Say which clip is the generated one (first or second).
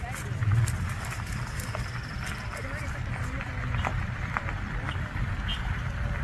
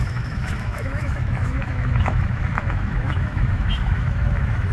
second